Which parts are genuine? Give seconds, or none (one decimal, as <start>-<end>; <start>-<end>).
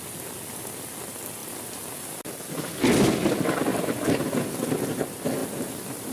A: 0.0-3.7; 4.3-6.1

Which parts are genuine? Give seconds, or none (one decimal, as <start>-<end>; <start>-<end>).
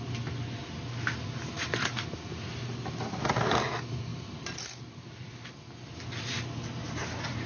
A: 0.0-4.1; 4.6-7.5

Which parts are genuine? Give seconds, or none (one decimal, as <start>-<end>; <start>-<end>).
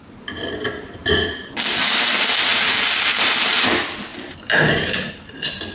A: 1.0-1.6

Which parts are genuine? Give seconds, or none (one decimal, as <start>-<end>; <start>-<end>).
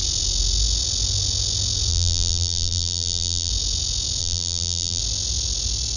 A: 0.0-1.9; 3.5-4.2; 5.0-6.0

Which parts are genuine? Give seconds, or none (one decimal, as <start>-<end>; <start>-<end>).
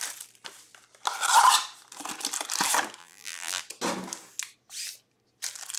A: 0.0-3.0; 3.6-5.8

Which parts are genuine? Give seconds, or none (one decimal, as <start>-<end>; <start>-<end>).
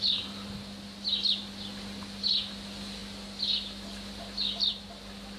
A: 0.0-5.4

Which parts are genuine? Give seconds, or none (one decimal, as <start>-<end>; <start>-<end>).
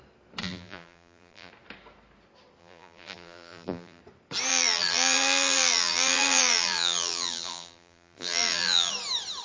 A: 0.0-0.4; 1.5-2.6; 4.0-4.5; 8.9-9.4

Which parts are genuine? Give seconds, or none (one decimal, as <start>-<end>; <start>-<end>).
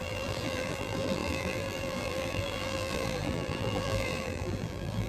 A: none